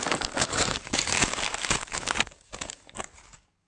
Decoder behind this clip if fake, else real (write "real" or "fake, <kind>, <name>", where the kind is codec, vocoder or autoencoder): fake, codec, DAC